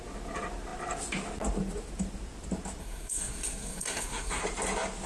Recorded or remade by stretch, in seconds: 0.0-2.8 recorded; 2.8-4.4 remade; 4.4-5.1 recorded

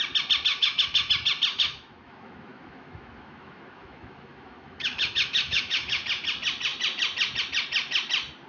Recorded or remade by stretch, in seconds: 0.0-0.5 recorded; 0.5-1.1 remade; 1.1-1.5 recorded; 1.5-6.0 remade; 6.0-8.5 recorded

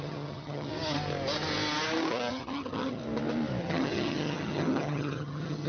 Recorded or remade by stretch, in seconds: 0.0-0.7 remade; 0.7-2.3 recorded; 2.3-3.0 remade; 3.0-3.6 recorded; 3.6-5.7 remade

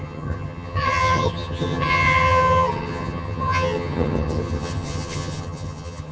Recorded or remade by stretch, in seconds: 0.0-6.1 remade

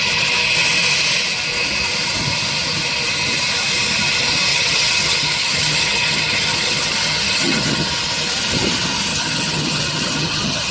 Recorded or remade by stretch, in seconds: 0.0-4.5 recorded; 4.5-7.9 remade; 7.9-9.1 recorded; 9.1-10.7 remade

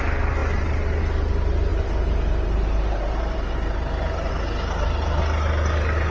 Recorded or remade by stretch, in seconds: 0.0-1.7 recorded; 1.7-4.3 remade; 4.3-6.1 recorded